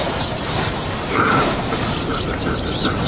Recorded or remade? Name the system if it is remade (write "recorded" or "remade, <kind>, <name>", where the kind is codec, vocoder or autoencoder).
remade, vocoder, BigVGAN v2